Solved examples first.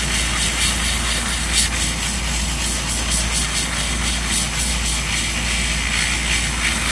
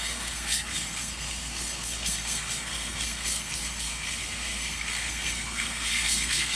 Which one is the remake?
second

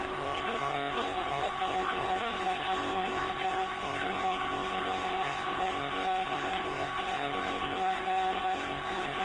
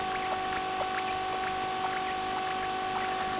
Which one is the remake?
first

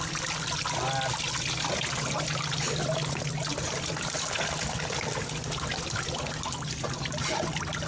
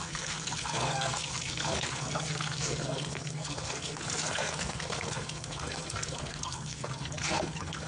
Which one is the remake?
second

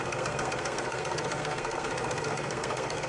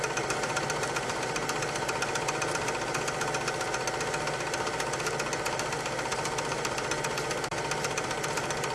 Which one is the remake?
first